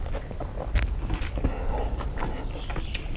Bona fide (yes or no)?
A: yes